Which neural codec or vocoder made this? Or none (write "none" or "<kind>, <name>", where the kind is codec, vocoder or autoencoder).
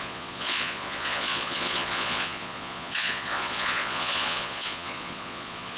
vocoder, Vocos